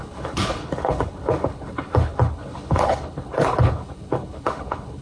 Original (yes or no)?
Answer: no